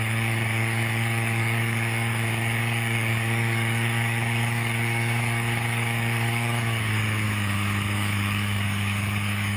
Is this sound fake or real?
fake